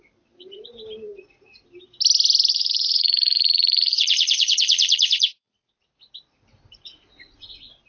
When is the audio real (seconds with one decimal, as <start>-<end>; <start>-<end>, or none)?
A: 0.0-2.5; 5.7-7.9